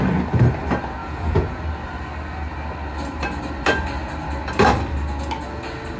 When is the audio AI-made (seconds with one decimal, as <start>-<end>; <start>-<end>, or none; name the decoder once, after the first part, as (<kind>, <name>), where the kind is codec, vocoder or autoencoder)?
1.0-1.6 (vocoder, Vocos)

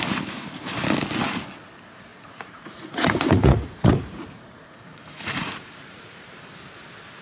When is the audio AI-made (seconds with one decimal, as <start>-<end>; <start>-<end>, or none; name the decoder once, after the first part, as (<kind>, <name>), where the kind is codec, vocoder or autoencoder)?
2.1-6.3 (vocoder, Vocos)

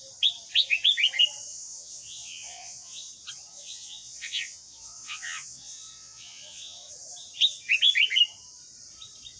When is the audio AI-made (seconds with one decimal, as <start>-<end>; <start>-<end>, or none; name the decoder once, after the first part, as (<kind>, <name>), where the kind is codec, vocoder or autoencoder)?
1.5-3.1 (vocoder, Vocos); 3.5-6.9

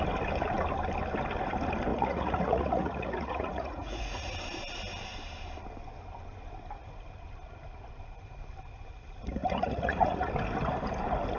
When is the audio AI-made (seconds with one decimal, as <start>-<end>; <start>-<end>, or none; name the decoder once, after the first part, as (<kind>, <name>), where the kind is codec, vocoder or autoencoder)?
1.9-4.3 (vocoder, Vocos); 9.4-10.3

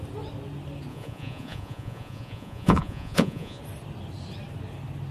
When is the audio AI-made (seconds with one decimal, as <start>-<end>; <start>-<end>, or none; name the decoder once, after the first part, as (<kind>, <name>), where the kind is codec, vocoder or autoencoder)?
0.9-3.6 (vocoder, Vocos)

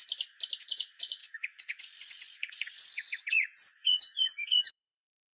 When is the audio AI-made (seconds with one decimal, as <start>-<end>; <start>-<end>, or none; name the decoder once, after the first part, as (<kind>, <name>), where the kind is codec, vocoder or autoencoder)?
0.6-5.3 (vocoder, Vocos)

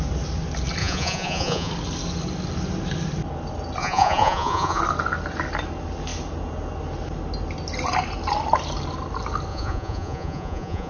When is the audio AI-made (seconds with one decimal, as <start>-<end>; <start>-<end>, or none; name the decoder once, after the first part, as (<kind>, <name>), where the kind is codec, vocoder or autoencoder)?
0.8-1.7 (vocoder, Vocos); 3.8-4.8; 9.5-10.9

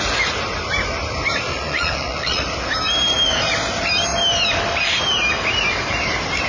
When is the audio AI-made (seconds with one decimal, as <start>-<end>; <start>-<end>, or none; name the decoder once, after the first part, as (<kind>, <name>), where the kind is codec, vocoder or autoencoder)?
1.5-2.4 (vocoder, Vocos)